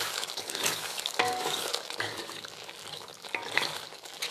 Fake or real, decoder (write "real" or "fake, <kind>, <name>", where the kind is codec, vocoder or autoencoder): fake, codec, DAC